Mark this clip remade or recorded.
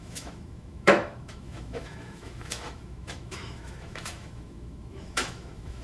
remade